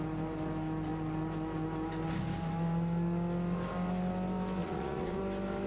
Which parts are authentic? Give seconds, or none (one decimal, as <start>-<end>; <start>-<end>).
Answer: 0.0-4.6; 5.2-5.7